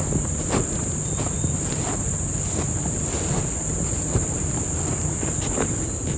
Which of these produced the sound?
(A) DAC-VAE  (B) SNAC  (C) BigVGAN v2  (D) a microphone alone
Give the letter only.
D